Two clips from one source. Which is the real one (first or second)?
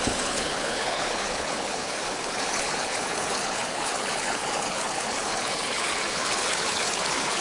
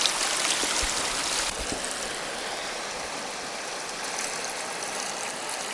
second